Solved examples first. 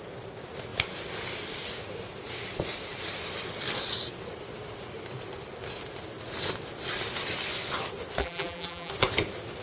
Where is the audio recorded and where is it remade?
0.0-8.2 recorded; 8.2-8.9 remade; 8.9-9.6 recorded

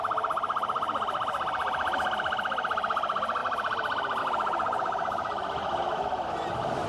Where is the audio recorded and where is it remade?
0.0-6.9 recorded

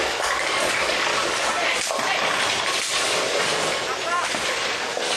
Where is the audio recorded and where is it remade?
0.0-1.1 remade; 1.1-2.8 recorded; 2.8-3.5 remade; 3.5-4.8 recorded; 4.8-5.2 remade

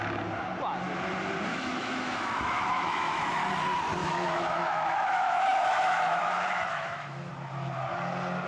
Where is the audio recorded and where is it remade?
0.0-1.5 recorded; 1.5-3.4 remade; 3.4-4.0 recorded; 4.0-7.3 remade; 7.3-8.5 recorded

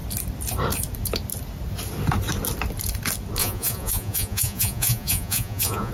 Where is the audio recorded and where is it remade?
0.0-3.4 recorded; 3.4-5.9 remade

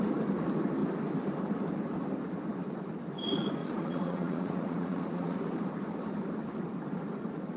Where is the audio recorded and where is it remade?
0.0-3.6 recorded; 3.6-5.4 remade; 5.4-7.6 recorded